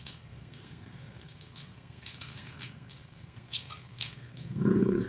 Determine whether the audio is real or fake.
fake